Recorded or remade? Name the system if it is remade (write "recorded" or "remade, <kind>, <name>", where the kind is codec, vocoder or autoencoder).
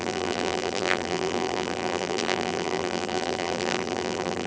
remade, vocoder, BigVGAN v2